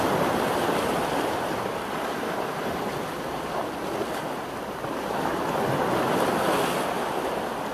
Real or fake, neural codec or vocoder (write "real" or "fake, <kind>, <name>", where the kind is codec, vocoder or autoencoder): real